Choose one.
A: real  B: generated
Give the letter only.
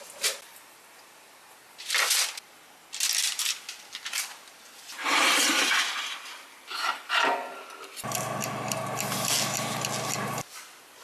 A